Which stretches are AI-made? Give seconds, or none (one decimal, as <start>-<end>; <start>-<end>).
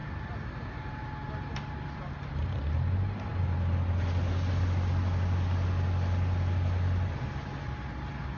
none